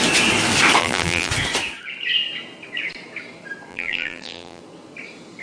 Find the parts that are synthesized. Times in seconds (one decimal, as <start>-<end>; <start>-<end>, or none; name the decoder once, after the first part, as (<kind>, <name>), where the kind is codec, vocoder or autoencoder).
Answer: 0.8-1.3 (vocoder, BigVGAN v2); 3.7-4.6